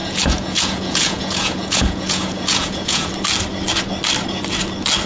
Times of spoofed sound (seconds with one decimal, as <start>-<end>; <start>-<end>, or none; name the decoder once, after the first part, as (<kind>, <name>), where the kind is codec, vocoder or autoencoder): 0.0-3.1 (vocoder, Vocos)